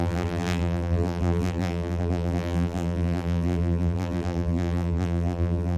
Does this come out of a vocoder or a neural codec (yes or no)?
yes